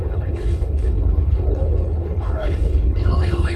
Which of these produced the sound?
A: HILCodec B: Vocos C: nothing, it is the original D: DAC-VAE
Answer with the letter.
A